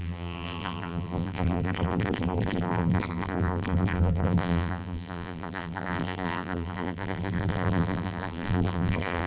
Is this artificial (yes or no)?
yes